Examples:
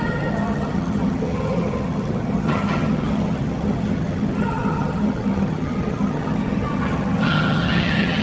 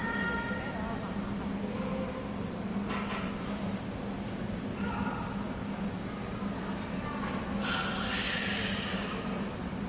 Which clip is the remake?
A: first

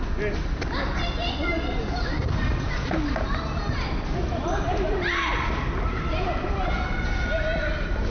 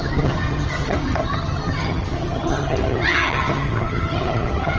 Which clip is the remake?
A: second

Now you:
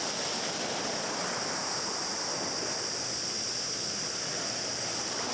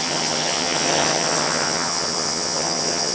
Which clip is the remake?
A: second